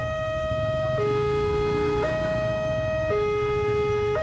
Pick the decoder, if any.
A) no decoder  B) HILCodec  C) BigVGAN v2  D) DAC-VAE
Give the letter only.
D